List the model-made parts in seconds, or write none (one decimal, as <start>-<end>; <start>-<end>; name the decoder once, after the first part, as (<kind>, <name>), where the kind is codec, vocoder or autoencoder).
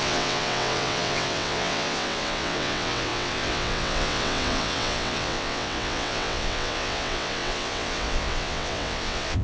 0.0-9.4 (vocoder, WaveNeXt)